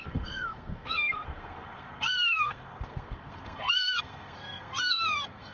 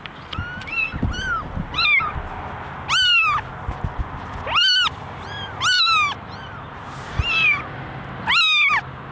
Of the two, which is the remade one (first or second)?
first